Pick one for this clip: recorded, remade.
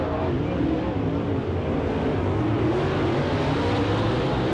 recorded